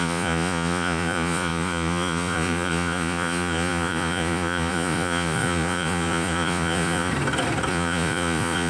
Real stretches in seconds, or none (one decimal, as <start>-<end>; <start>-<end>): 7.1-7.7